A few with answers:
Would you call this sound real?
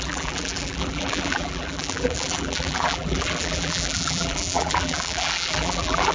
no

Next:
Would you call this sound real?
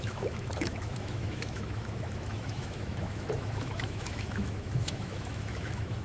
no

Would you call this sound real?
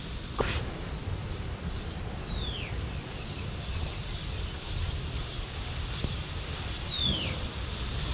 yes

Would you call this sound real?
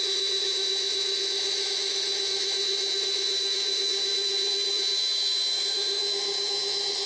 no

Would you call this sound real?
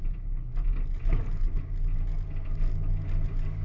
yes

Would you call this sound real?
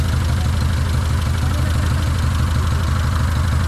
yes